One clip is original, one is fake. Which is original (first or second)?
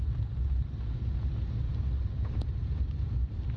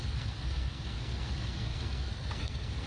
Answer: first